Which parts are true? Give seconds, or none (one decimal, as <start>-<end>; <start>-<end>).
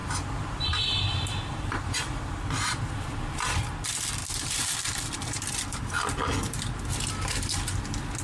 3.4-4.2; 5.4-8.2